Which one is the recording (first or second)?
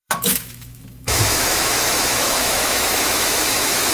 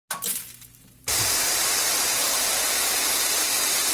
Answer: second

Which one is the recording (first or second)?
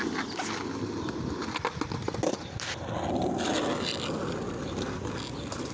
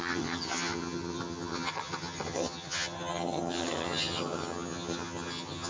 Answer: first